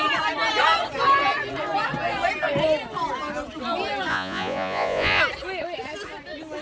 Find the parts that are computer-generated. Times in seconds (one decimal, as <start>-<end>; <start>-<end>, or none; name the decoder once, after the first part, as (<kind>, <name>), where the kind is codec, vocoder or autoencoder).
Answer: 4.1-5.2 (vocoder, Vocos)